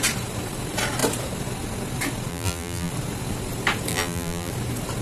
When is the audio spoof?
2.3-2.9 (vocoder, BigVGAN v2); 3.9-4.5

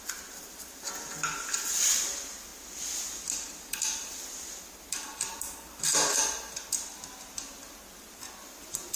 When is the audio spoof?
none

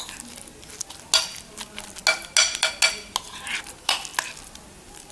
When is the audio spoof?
none

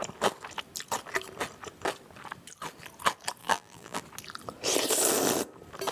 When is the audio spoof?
3.4-4.0 (vocoder, BigVGAN v2)

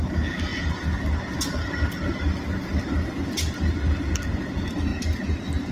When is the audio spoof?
none

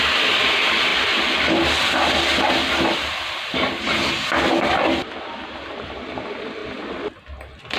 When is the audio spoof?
0.9-3.8 (vocoder, BigVGAN v2)